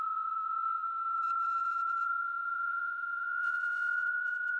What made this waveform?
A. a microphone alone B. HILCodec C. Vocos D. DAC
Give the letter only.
C